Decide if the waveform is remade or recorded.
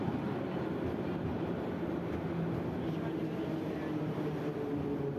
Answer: recorded